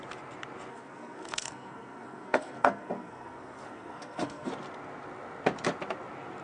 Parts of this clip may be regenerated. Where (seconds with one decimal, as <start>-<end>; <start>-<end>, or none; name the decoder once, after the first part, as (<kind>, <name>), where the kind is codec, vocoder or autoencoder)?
0.7-4.5 (codec, SNAC)